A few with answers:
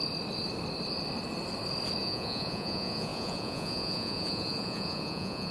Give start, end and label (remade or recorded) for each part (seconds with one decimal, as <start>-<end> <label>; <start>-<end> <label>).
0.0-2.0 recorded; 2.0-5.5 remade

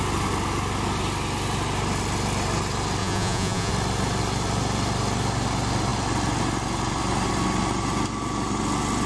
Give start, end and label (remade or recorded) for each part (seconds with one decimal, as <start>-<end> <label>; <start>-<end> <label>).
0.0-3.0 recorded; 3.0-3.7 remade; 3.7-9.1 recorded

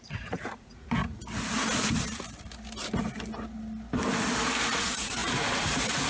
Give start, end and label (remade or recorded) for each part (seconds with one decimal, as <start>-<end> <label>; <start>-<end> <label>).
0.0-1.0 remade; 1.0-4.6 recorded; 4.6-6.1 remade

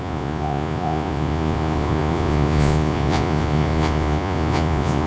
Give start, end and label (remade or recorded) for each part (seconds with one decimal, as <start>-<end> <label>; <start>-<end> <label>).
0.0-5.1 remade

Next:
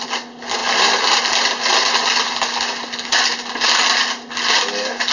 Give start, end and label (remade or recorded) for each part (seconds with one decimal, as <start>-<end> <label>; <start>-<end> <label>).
0.0-5.1 recorded